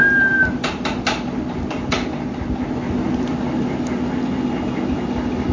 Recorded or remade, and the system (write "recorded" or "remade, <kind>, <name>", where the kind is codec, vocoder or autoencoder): recorded